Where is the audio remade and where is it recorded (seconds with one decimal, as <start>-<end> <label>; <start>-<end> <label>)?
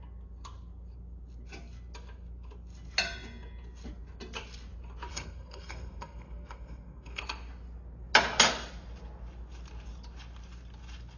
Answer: 0.0-5.1 recorded; 5.1-7.2 remade; 7.2-11.2 recorded